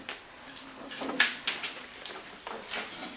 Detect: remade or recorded recorded